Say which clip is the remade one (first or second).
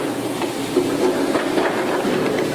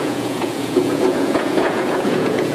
second